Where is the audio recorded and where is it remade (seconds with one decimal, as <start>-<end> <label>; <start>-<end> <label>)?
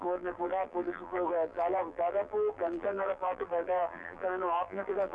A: 0.0-5.1 remade